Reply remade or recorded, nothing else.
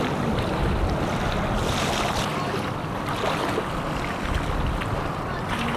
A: recorded